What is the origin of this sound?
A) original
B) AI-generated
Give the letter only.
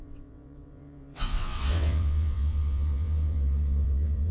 B